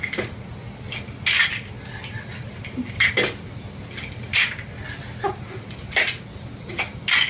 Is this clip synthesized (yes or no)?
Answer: no